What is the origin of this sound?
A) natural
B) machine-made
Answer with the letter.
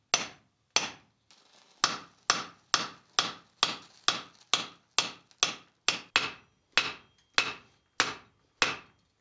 A